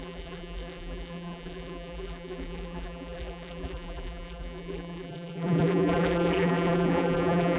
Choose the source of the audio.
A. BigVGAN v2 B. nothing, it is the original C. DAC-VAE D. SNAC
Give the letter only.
A